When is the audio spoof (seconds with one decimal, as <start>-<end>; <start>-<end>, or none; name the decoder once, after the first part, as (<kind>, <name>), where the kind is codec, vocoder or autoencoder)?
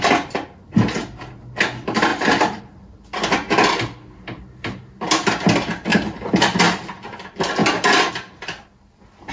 5.9-6.6 (vocoder, BigVGAN v2)